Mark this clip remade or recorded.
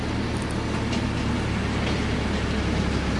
recorded